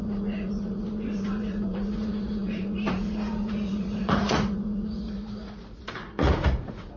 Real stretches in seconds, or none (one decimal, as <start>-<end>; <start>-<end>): none